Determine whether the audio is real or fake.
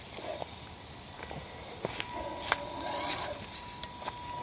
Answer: real